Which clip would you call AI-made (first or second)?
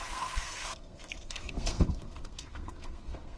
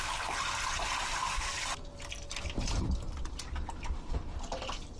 first